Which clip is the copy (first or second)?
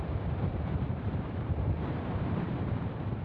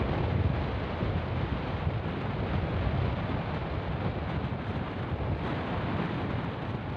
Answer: first